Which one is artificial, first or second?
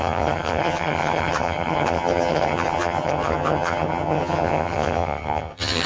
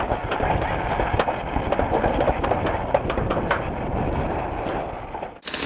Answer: first